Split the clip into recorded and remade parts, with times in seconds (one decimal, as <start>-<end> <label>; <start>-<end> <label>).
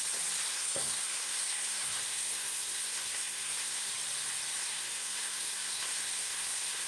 0.0-0.5 recorded; 0.5-3.9 remade; 3.9-4.6 recorded; 4.6-6.9 remade